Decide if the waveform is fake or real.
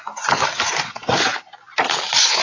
real